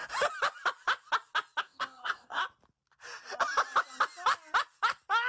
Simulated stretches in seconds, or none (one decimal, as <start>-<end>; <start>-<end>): 1.6-2.4